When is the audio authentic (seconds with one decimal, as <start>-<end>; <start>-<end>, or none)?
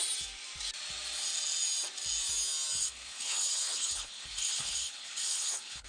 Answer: 0.0-2.8